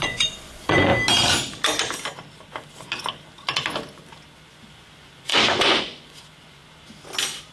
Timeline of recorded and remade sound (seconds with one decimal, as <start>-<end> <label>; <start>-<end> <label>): 0.0-0.9 remade; 0.9-4.5 recorded; 4.5-6.6 remade; 6.6-7.5 recorded